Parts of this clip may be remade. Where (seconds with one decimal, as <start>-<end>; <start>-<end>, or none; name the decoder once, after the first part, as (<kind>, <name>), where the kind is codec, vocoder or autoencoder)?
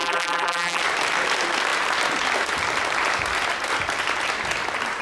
0.0-0.8 (vocoder, BigVGAN v2)